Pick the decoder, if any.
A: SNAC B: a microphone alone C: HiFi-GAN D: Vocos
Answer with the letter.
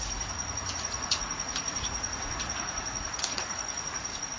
D